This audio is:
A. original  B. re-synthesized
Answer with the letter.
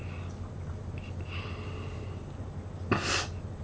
A